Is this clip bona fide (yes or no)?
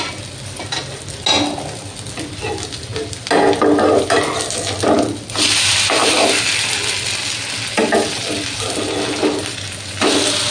yes